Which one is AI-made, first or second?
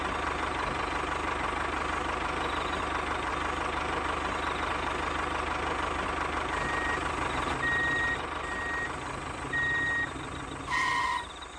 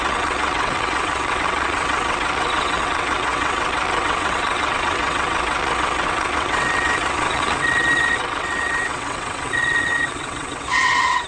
second